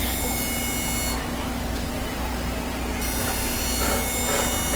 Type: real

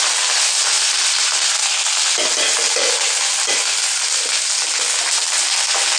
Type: real